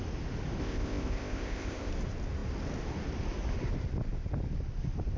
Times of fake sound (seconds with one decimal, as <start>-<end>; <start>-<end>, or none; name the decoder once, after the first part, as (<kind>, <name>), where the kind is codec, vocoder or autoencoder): 0.6-1.9 (codec, ZipCodec)